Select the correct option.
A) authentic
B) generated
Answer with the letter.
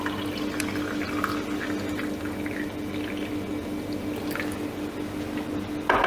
A